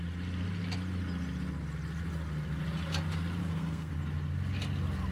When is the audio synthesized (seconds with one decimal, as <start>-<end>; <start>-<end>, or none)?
3.4-3.9